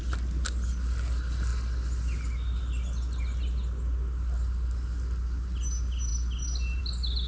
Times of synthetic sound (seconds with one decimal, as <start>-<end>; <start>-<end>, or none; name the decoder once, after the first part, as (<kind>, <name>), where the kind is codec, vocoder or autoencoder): none